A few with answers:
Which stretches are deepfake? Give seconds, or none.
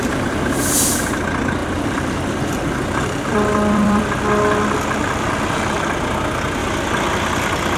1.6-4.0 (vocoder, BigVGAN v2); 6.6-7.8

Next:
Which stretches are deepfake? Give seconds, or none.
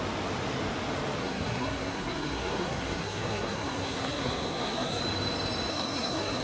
1.2-5.0 (codec, SNAC); 5.7-6.4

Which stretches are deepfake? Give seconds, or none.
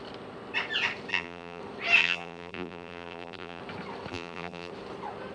1.1-1.6 (vocoder, BigVGAN v2); 2.0-3.6; 4.1-4.7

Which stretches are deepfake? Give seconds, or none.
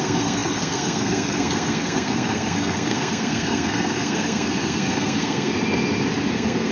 0.0-5.5 (codec, SNAC); 6.3-6.7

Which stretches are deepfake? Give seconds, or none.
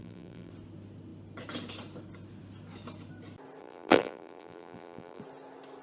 0.0-0.5 (vocoder, BigVGAN v2); 3.6-5.2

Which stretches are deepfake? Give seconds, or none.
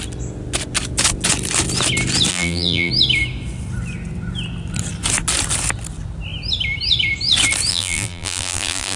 2.3-2.9 (vocoder, BigVGAN v2); 7.7-9.0